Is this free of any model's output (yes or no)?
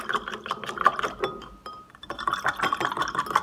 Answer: yes